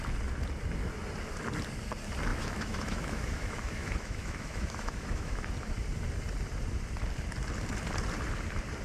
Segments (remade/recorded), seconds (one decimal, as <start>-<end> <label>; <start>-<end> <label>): 0.0-2.3 recorded; 2.3-5.5 remade; 5.5-8.8 recorded